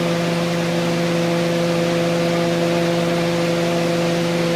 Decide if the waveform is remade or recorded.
remade